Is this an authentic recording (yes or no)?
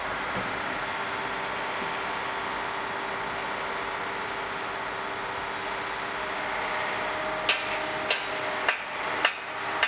yes